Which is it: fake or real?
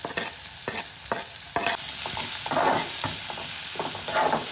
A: real